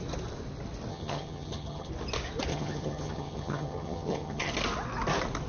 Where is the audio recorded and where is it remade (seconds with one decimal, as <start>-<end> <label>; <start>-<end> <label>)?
0.0-0.9 recorded; 0.9-1.9 remade; 1.9-2.5 recorded; 2.5-4.5 remade; 4.5-5.5 recorded